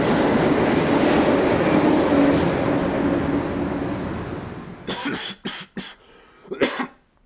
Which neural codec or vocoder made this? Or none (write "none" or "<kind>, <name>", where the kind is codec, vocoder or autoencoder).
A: none